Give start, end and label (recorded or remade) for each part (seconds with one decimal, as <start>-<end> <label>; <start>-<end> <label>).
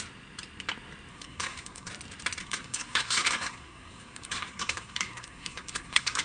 0.0-1.1 recorded; 1.1-1.9 remade; 1.9-2.4 recorded; 2.4-6.2 remade